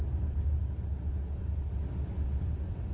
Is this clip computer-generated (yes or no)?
no